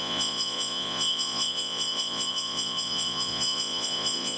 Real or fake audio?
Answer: fake